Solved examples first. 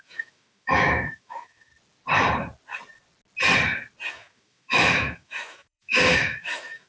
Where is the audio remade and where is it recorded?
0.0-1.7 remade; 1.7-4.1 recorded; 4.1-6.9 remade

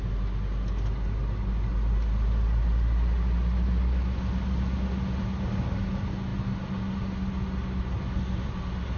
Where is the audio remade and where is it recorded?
0.0-9.0 recorded

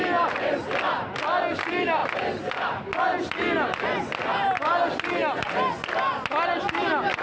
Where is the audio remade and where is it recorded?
0.0-7.2 recorded